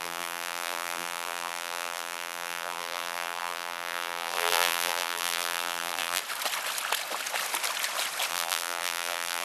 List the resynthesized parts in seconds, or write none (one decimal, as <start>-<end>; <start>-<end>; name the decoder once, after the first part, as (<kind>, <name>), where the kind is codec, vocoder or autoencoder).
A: 0.0-6.2 (vocoder, BigVGAN v2); 8.3-9.4